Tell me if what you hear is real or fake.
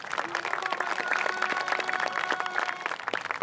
real